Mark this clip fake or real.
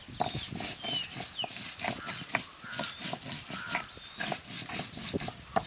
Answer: real